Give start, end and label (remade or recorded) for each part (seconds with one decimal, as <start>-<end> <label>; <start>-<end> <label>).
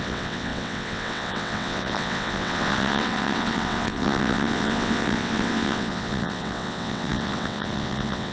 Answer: 0.0-8.3 remade